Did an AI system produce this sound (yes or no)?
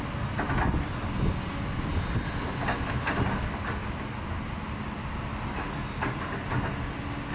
no